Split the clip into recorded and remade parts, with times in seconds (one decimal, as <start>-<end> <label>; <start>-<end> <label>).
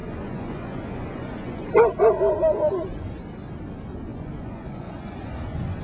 0.0-1.6 remade; 1.6-4.1 recorded; 4.1-5.8 remade